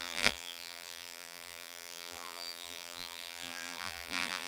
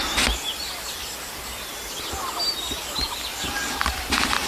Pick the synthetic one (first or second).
first